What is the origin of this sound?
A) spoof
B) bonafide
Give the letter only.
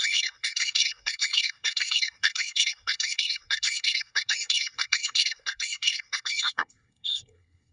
A